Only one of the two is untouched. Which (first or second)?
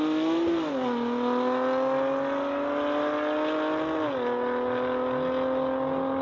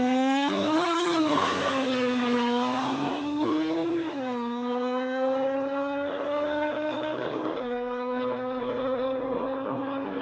first